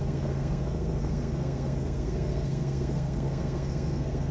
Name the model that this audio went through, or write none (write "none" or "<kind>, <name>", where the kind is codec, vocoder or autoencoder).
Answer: codec, SNAC